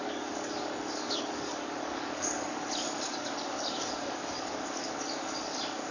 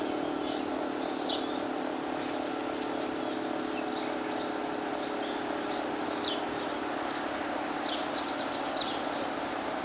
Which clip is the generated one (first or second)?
first